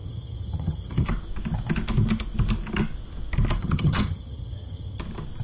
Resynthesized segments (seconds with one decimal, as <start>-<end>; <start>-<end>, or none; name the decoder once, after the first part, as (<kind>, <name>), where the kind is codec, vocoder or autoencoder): 0.0-1.1 (vocoder, HiFi-GAN); 3.6-5.0